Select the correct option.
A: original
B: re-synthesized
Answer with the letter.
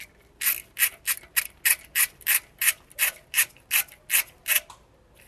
A